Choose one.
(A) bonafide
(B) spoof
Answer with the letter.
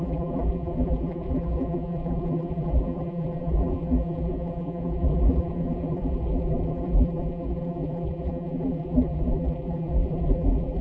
B